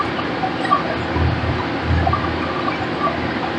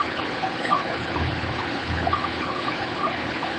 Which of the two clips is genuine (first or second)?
first